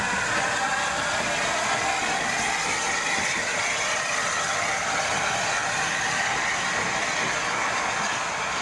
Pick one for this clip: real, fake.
real